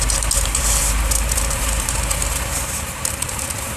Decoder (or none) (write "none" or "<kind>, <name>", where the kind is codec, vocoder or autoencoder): vocoder, BigVGAN v2